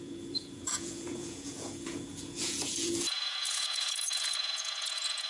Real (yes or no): no